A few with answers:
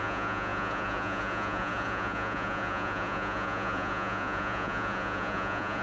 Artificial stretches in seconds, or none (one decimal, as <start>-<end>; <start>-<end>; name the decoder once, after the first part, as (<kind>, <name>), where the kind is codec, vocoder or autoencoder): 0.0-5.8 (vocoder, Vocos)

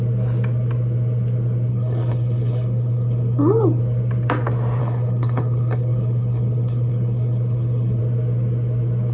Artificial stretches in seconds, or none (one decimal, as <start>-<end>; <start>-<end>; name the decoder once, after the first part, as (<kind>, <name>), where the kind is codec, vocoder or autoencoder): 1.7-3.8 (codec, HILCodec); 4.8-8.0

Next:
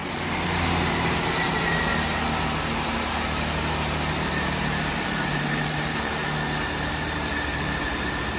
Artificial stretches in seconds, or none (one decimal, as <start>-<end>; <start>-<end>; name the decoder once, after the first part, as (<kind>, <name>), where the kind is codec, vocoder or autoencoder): 0.0-1.9 (vocoder, BigVGAN v2); 4.1-6.2; 6.9-8.4